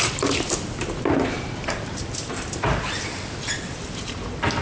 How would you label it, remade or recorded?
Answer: remade